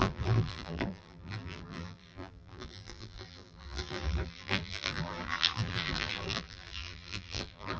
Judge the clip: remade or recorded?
remade